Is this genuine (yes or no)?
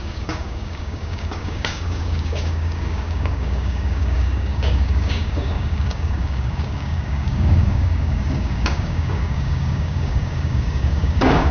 no